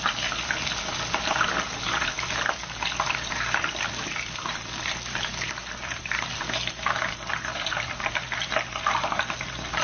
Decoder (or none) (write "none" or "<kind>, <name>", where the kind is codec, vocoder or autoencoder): none